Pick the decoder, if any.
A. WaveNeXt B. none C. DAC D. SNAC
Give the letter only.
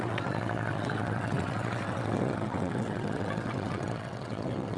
A